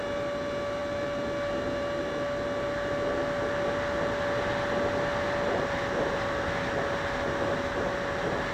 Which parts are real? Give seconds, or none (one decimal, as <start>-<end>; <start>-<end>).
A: 0.0-8.5